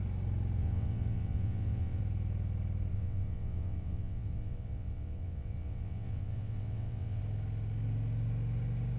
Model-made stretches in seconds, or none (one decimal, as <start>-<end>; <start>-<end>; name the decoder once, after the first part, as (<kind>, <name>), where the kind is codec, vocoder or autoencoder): 0.6-2.0 (vocoder, WaveNeXt); 2.9-7.2